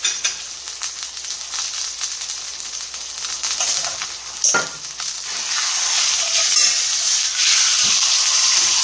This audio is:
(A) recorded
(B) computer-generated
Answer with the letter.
A